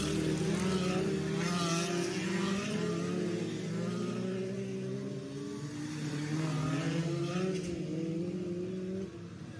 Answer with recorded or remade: recorded